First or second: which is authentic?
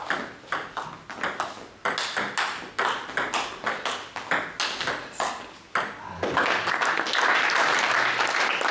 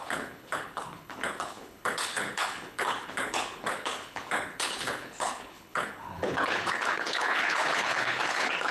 first